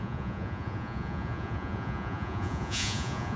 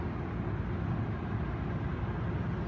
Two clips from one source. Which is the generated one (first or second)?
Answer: first